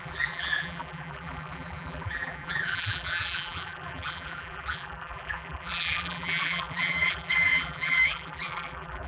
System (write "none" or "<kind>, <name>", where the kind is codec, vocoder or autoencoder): vocoder, BigVGAN v2